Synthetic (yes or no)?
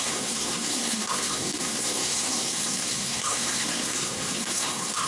yes